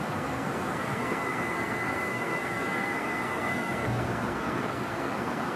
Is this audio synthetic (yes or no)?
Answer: yes